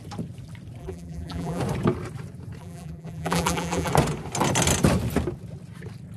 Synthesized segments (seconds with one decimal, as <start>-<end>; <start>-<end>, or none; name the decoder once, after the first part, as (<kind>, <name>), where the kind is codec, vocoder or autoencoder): 0.8-1.6 (vocoder, BigVGAN v2); 2.6-3.9